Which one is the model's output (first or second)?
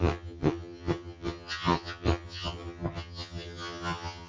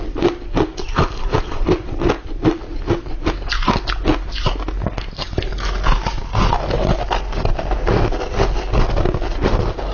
first